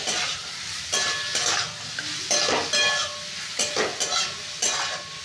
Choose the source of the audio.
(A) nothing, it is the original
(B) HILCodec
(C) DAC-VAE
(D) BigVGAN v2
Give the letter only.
A